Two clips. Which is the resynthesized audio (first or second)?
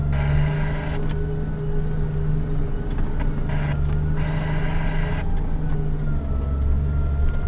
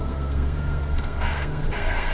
second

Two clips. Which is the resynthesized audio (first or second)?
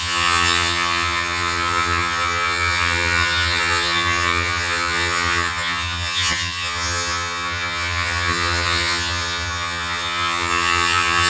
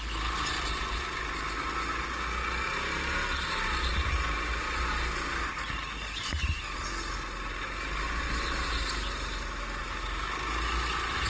first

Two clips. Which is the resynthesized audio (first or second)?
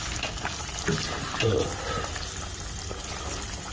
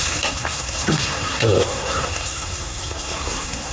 second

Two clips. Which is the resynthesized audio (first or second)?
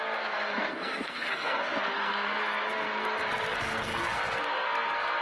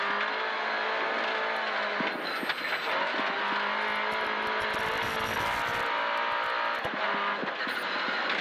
first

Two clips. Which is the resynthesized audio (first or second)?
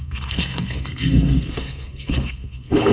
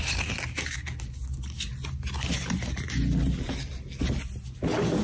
first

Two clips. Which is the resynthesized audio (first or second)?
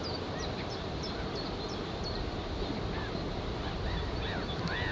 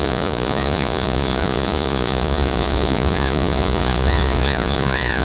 second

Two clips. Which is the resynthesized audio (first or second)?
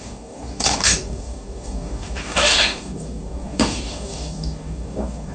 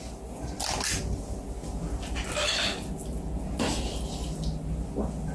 first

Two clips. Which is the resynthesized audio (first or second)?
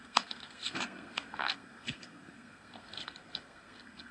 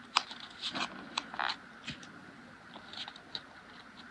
first